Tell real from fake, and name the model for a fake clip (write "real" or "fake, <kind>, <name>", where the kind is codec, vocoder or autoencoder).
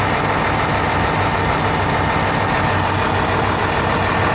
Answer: real